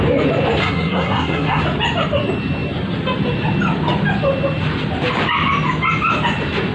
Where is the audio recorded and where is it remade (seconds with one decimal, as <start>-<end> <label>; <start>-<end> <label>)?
0.0-0.6 recorded; 0.6-1.6 remade; 1.6-6.7 recorded